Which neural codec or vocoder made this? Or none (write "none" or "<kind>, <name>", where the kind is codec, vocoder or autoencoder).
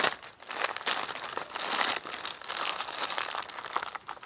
none